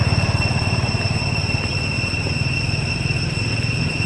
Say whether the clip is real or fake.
real